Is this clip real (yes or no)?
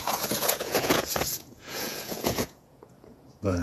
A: no